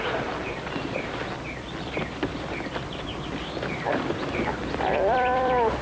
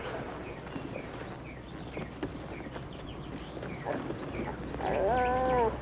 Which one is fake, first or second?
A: first